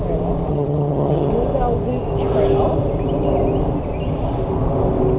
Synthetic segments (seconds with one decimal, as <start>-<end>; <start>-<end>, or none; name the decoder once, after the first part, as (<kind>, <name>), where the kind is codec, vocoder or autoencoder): 0.5-1.3 (vocoder, HiFi-GAN)